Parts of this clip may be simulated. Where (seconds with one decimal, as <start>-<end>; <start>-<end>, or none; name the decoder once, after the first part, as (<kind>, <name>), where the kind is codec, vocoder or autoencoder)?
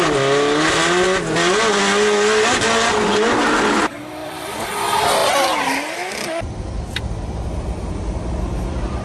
4.2-4.7 (vocoder, BigVGAN v2)